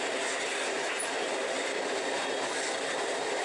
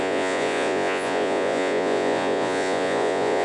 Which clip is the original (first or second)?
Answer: first